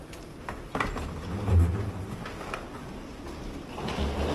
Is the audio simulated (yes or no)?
no